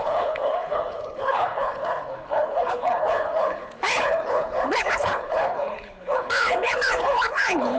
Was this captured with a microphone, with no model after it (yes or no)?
no